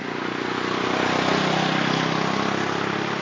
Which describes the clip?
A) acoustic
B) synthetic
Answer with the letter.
A